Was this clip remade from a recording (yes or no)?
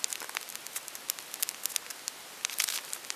no